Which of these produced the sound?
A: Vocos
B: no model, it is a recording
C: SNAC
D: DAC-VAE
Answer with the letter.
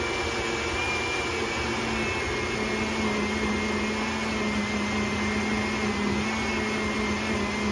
B